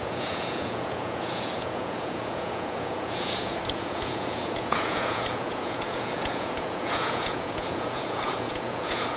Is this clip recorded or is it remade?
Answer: remade